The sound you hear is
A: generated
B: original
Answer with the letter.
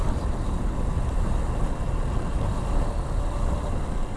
B